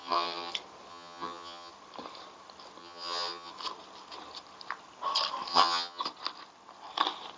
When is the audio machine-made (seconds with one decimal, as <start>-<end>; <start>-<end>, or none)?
0.0-0.5; 0.9-1.7; 2.8-3.5; 5.5-6.0